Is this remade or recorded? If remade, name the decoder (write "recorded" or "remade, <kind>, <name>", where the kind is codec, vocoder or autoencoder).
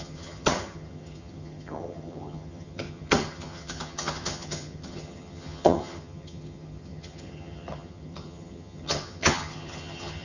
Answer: remade, vocoder, HiFi-GAN